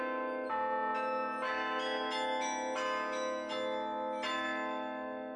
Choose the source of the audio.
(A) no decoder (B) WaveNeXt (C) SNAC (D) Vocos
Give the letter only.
A